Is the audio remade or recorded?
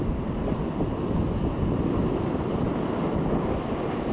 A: recorded